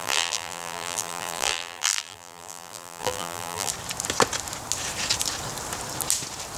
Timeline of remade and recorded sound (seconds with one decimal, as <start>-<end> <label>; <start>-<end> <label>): 0.0-3.7 remade; 3.7-6.6 recorded